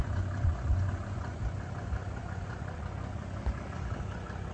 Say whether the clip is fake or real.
fake